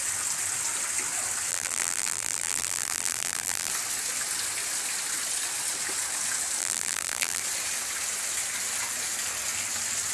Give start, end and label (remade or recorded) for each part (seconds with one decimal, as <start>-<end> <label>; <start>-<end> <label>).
0.0-1.5 recorded; 1.5-3.7 remade; 3.7-6.6 recorded; 6.6-7.4 remade; 7.4-10.1 recorded